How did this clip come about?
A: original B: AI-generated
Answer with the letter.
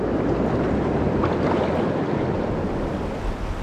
A